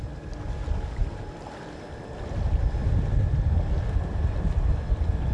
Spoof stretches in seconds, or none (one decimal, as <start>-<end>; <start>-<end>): none